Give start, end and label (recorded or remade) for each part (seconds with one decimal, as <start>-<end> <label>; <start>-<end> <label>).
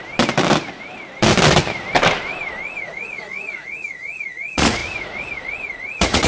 0.0-2.8 recorded; 2.8-6.3 remade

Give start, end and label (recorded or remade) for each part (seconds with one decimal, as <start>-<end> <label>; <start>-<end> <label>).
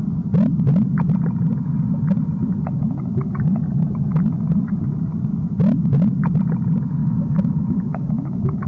0.0-7.0 recorded; 7.0-8.7 remade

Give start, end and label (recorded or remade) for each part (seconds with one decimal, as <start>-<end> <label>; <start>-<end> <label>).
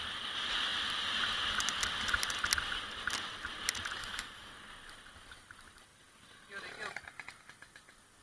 0.0-4.0 recorded; 4.0-4.5 remade; 4.5-8.2 recorded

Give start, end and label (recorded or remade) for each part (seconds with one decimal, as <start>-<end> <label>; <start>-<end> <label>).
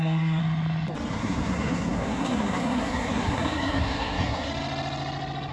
0.0-0.4 remade; 0.4-1.1 recorded; 1.1-4.5 remade; 4.5-5.5 recorded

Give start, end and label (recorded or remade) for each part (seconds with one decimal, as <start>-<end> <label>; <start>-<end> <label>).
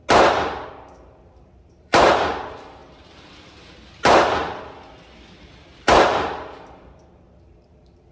0.0-0.7 recorded; 0.7-2.8 remade; 2.8-5.6 recorded; 5.6-8.1 remade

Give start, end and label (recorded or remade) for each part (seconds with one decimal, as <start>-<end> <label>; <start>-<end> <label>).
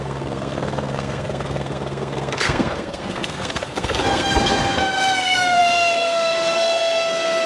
0.0-7.5 remade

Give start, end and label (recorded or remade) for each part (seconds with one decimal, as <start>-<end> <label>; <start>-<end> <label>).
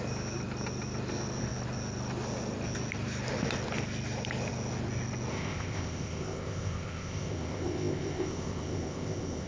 0.0-5.3 recorded; 5.3-9.5 remade